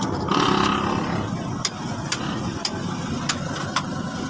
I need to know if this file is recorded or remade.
recorded